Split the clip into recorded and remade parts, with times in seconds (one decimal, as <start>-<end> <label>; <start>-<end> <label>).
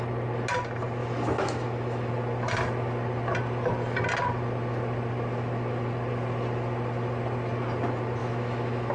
0.0-1.0 recorded; 1.0-2.1 remade; 2.1-8.2 recorded; 8.2-8.9 remade